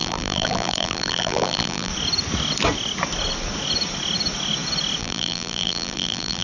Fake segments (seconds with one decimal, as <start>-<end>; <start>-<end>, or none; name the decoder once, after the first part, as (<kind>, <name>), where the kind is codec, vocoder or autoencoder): 0.0-1.9 (vocoder, BigVGAN v2); 5.0-6.4